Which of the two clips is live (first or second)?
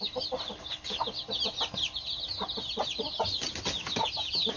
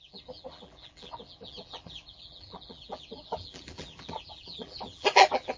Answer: first